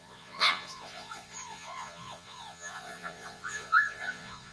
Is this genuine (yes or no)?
no